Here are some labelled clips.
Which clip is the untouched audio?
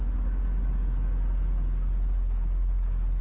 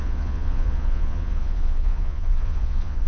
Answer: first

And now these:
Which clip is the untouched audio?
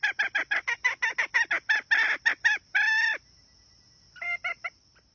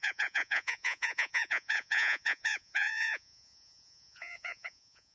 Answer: first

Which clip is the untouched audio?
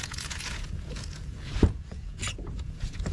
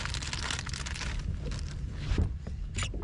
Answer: second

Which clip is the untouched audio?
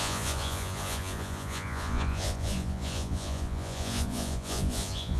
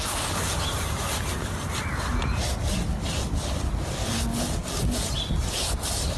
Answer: second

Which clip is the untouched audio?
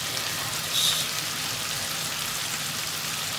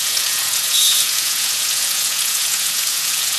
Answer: first